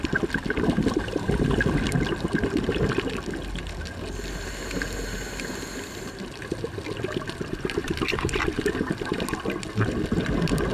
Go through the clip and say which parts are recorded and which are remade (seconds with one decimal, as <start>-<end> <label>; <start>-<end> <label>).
0.0-10.7 recorded